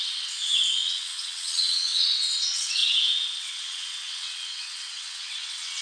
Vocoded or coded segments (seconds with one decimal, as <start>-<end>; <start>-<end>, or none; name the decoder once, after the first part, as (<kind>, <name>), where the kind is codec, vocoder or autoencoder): 0.0-5.8 (vocoder, WaveNeXt)